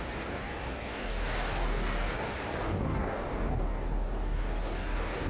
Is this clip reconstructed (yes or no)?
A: yes